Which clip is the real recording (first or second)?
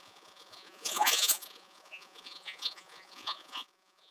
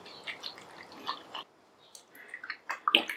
second